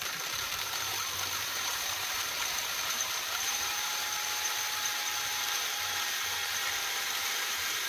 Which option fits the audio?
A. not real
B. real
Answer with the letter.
A